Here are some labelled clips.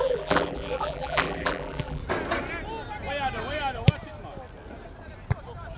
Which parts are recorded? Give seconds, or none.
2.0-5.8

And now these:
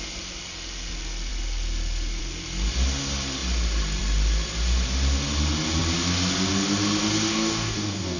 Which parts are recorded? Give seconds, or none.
0.0-7.3

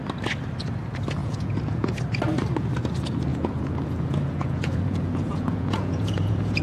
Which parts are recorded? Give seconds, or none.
0.0-1.2; 2.0-3.3

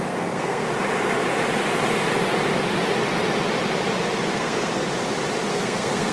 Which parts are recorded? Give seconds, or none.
0.6-4.3; 4.8-5.5